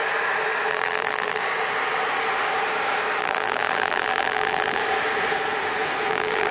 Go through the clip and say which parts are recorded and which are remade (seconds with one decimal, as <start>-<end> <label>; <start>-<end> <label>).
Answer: 0.0-0.7 recorded; 0.7-1.4 remade; 1.4-3.2 recorded; 3.2-4.8 remade; 4.8-6.1 recorded; 6.1-6.5 remade